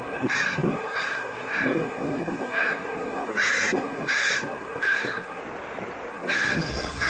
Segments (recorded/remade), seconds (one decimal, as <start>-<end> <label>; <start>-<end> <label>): 0.0-5.4 remade; 5.4-6.1 recorded; 6.1-7.1 remade

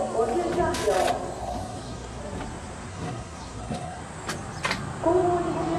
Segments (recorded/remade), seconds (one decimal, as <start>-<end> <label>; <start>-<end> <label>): 0.0-1.4 recorded; 1.4-2.2 remade; 2.2-2.9 recorded; 2.9-4.0 remade; 4.0-5.8 recorded

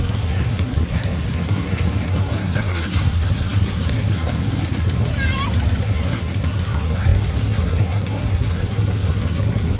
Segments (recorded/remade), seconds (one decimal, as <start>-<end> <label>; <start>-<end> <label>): 0.0-5.1 remade; 5.1-5.8 recorded; 5.8-9.8 remade

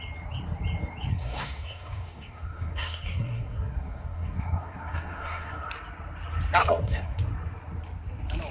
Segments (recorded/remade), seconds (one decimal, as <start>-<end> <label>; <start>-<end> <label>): 0.0-1.1 recorded; 1.1-5.7 remade; 5.7-6.6 recorded; 6.6-7.2 remade; 7.2-8.5 recorded